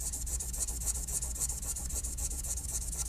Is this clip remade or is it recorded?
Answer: recorded